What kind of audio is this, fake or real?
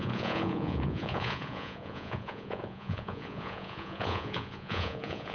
fake